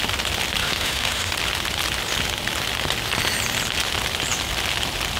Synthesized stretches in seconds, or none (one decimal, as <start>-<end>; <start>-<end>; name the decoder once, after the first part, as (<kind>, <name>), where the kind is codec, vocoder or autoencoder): 0.6-1.3 (autoencoder, DAC-VAE)